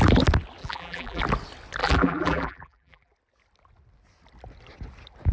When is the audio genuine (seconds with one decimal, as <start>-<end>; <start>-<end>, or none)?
0.0-0.6; 1.2-1.8; 3.1-5.3